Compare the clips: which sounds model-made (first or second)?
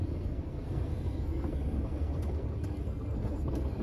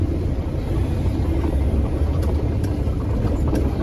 first